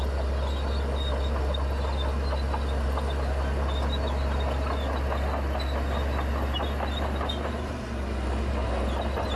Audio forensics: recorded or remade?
recorded